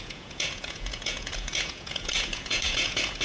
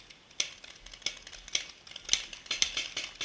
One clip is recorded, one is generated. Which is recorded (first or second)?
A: second